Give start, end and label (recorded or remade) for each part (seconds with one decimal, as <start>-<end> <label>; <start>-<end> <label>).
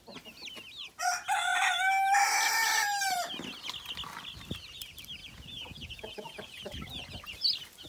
0.0-5.2 recorded; 5.2-7.1 remade; 7.1-7.9 recorded